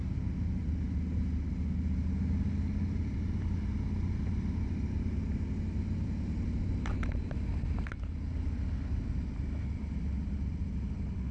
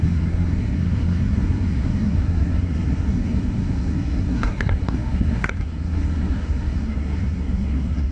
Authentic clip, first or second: first